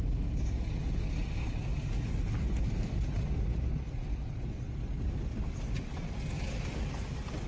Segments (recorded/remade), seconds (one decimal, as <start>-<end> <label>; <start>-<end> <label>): 0.0-7.5 recorded